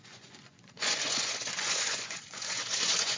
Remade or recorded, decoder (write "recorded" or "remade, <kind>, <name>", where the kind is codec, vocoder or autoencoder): remade, vocoder, Vocos